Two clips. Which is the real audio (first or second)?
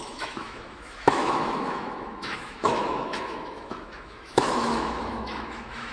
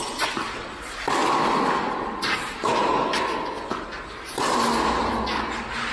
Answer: second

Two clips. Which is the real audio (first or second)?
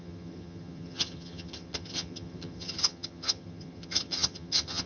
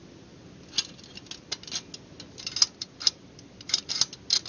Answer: second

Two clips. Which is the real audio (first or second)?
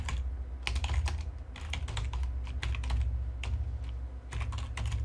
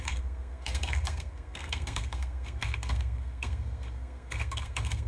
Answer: first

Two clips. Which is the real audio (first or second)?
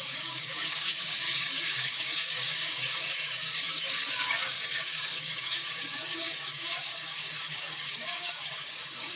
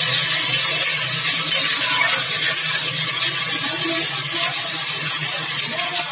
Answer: second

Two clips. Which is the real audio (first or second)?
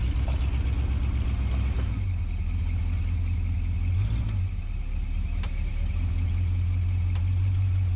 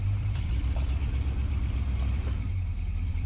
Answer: first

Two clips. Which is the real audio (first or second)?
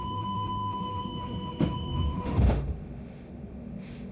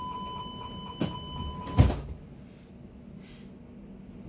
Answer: second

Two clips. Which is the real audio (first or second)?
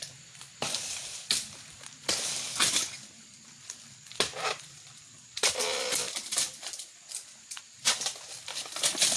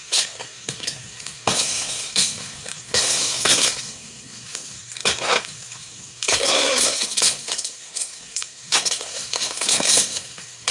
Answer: first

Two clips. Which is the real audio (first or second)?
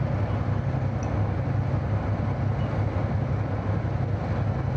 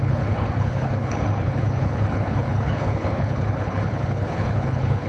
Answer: first